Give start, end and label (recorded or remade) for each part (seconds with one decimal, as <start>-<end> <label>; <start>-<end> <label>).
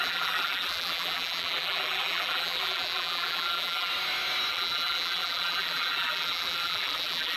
0.0-3.9 remade; 3.9-4.5 recorded; 4.5-7.4 remade